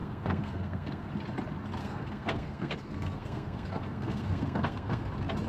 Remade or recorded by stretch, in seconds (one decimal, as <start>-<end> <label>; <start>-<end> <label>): 0.0-1.1 remade; 1.1-1.8 recorded; 1.8-5.1 remade; 5.1-5.5 recorded